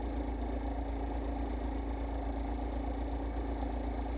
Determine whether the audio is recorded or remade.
recorded